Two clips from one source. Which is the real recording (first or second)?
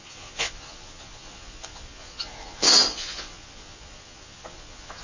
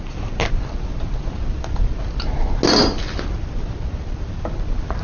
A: second